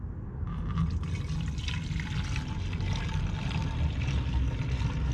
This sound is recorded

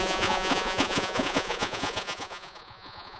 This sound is remade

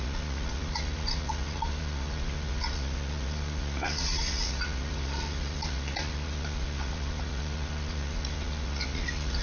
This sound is remade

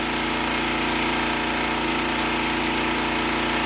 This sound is recorded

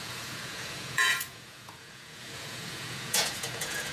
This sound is remade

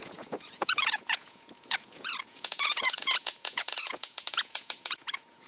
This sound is remade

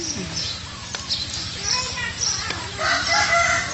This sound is recorded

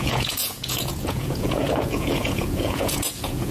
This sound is remade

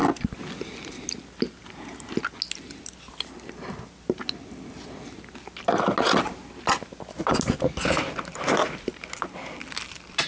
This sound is recorded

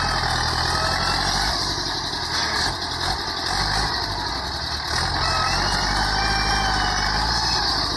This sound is recorded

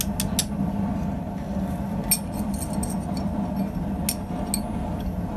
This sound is recorded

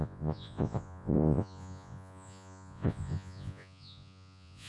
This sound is remade